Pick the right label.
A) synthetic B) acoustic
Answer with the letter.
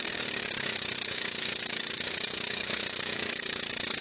A